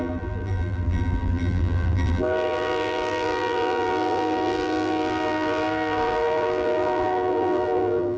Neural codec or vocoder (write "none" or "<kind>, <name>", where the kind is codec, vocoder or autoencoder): vocoder, BigVGAN v2